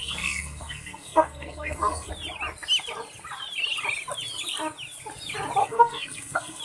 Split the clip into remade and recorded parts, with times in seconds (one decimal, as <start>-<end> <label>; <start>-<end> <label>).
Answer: 0.0-2.1 remade; 2.1-5.6 recorded; 5.6-6.6 remade